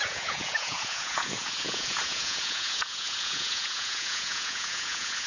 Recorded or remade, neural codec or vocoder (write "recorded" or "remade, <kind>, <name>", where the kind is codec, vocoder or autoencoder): remade, vocoder, Vocos